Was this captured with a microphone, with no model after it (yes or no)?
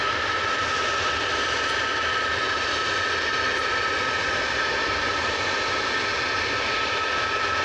yes